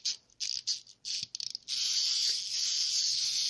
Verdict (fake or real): real